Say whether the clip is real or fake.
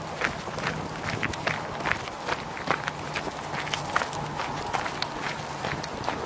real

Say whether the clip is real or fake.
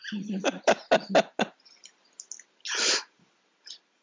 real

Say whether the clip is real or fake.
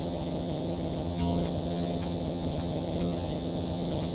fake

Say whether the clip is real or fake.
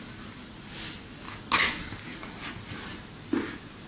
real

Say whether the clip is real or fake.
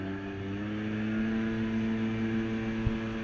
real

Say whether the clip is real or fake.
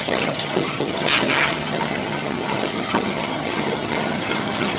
fake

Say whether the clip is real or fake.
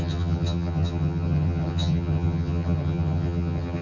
fake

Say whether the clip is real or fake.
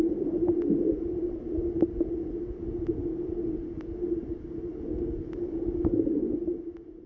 real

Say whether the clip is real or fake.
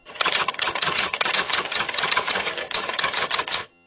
fake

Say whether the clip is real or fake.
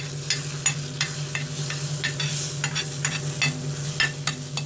real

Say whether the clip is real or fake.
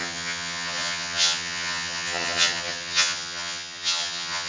fake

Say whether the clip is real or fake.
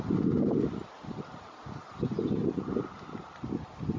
real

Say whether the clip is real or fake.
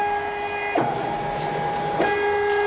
real